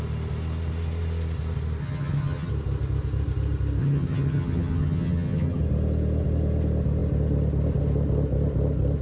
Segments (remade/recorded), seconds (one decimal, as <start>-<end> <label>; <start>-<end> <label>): 0.0-1.8 recorded; 1.8-2.5 remade; 2.5-3.8 recorded; 3.8-5.6 remade; 5.6-9.0 recorded